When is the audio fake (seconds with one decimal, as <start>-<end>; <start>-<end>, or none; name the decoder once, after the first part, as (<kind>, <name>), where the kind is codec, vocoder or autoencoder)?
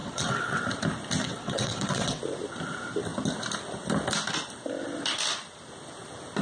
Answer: 0.0-0.6 (vocoder, WaveNeXt); 1.2-2.2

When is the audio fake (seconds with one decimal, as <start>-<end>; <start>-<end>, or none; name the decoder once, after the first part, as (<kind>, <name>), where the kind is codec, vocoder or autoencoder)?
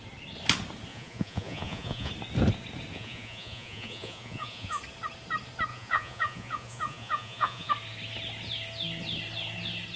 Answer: 0.9-2.1 (vocoder, Vocos); 2.9-4.8; 5.7-7.7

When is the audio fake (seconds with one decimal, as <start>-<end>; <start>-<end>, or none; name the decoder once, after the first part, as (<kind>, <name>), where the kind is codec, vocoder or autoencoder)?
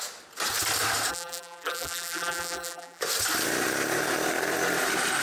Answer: 1.1-3.0 (vocoder, BigVGAN v2)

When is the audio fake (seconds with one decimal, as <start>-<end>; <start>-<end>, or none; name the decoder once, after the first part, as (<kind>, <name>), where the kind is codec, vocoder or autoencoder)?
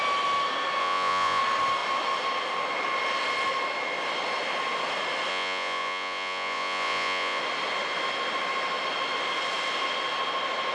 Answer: 0.8-1.4 (vocoder, Vocos); 5.3-7.4